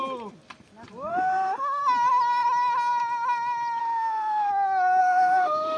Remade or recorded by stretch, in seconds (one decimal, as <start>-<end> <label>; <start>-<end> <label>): 0.0-1.1 recorded; 1.1-1.8 remade; 1.8-3.8 recorded; 3.8-4.5 remade; 4.5-5.0 recorded; 5.0-5.8 remade